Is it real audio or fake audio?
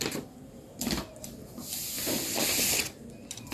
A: real